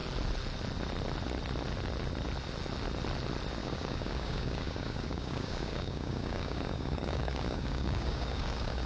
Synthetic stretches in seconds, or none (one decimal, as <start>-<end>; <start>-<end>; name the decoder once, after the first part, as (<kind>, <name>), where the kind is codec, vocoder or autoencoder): 3.6-8.9 (codec, DAC)